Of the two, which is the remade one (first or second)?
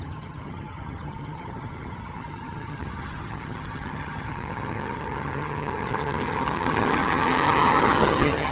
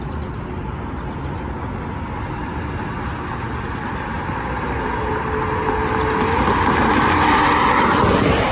first